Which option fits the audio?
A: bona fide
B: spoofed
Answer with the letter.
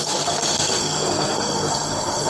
B